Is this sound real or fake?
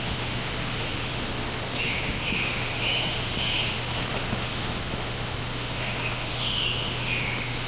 fake